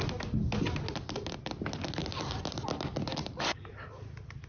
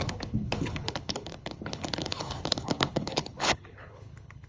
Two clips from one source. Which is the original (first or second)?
first